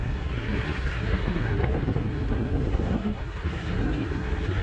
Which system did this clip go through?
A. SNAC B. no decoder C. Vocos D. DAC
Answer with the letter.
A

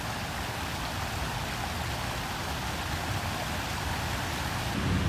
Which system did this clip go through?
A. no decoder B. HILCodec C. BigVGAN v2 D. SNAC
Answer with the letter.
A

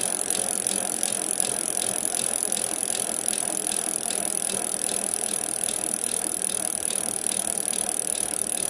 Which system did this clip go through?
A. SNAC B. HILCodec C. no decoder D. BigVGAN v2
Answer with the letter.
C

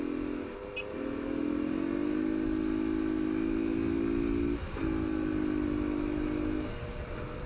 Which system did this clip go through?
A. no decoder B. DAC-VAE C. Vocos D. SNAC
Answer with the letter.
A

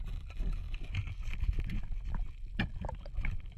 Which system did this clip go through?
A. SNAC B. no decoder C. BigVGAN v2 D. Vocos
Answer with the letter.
B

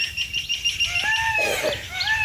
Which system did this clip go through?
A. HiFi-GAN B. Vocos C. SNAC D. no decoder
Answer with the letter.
D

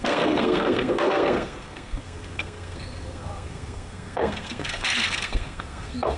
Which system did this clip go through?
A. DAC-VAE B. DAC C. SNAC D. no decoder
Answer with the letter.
C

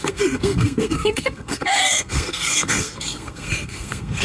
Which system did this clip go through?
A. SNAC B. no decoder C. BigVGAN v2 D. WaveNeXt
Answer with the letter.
A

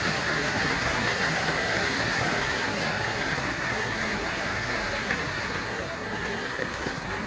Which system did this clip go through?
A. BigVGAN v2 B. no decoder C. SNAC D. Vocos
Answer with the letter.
C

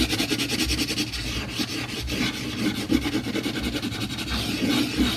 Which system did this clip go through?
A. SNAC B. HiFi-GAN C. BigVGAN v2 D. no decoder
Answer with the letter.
D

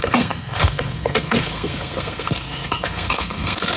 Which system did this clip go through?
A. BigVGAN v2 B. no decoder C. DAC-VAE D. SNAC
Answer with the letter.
D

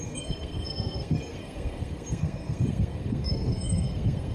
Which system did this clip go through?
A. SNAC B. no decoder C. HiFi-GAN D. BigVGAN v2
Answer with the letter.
A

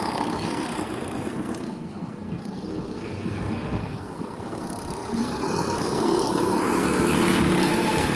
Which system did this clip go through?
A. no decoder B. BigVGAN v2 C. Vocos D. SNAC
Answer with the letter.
D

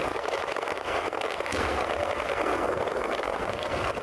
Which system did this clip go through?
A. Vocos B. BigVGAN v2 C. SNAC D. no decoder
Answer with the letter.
C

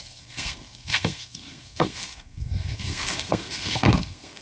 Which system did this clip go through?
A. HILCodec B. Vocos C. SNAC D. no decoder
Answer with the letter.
C